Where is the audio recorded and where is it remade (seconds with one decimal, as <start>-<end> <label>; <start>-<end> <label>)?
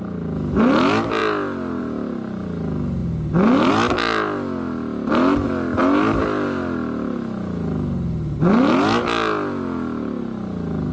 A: 0.0-10.9 recorded